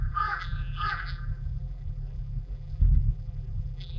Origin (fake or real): fake